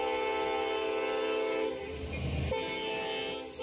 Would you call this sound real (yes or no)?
yes